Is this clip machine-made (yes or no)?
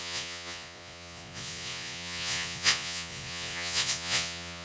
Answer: yes